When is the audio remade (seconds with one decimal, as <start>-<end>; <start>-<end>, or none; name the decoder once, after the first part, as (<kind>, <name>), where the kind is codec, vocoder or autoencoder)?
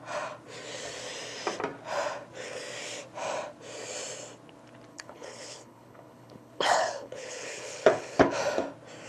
4.9-8.4 (codec, HILCodec)